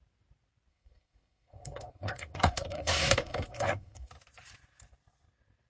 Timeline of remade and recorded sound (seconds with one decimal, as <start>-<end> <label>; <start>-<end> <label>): 0.0-0.7 recorded; 0.7-4.1 remade; 4.1-5.7 recorded

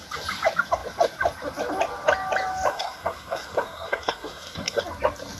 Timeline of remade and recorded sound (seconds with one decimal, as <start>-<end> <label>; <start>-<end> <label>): 0.0-2.7 recorded; 2.7-4.8 remade; 4.8-5.4 recorded

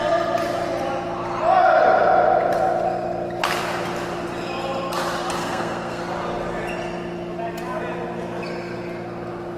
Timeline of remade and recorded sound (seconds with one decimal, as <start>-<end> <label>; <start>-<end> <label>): 0.0-5.4 recorded; 5.4-6.0 remade; 6.0-9.6 recorded